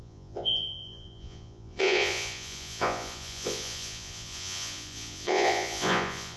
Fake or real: fake